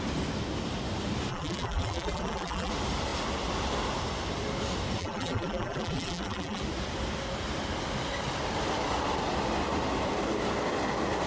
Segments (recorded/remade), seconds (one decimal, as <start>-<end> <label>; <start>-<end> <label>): 0.0-1.3 recorded; 1.3-2.7 remade; 2.7-5.0 recorded; 5.0-6.6 remade; 6.6-11.3 recorded